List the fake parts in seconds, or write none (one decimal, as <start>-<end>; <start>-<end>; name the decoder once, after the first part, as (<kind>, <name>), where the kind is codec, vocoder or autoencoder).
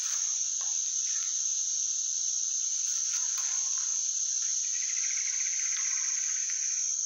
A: 0.0-3.9 (vocoder, BigVGAN v2); 5.2-7.1